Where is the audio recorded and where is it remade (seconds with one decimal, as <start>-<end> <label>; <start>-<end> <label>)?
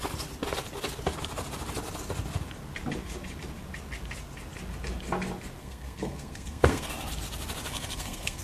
0.0-5.6 recorded; 5.6-6.9 remade; 6.9-7.7 recorded; 7.7-8.4 remade